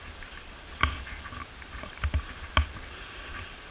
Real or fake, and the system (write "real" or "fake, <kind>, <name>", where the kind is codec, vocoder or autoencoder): real